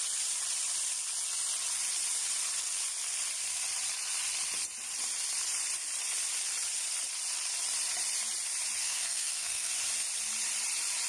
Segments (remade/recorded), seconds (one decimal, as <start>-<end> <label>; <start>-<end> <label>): 0.0-8.8 recorded; 8.8-9.7 remade; 9.7-11.1 recorded